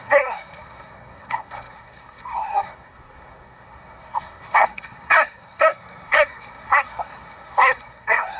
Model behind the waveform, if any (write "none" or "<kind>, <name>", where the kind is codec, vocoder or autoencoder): codec, SNAC